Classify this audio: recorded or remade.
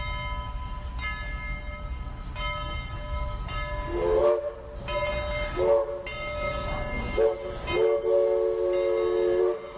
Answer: recorded